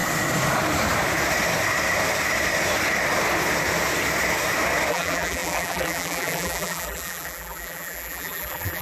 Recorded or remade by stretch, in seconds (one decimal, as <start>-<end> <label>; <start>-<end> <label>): 0.0-4.9 recorded; 4.9-8.8 remade